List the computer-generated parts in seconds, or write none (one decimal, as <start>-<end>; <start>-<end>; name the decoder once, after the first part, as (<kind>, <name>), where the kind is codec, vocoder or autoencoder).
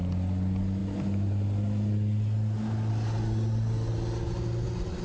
none